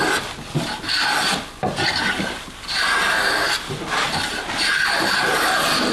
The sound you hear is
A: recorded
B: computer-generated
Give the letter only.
A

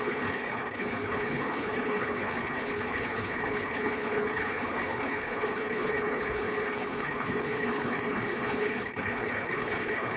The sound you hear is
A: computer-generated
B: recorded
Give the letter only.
A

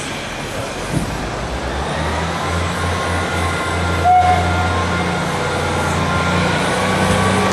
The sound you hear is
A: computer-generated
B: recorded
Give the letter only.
B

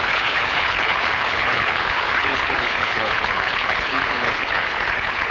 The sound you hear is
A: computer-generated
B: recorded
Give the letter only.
A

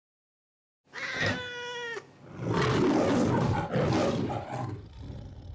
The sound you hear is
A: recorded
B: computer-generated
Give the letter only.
A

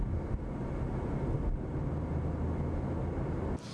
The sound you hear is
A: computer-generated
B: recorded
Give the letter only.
B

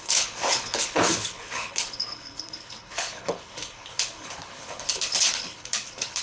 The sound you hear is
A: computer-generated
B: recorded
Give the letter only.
A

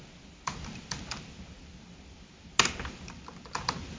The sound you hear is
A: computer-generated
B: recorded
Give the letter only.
B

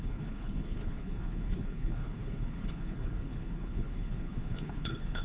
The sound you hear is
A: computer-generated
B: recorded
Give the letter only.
A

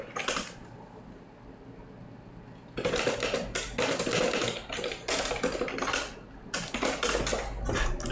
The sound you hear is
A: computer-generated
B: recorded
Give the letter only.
B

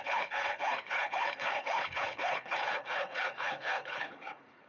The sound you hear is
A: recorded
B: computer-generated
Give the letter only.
B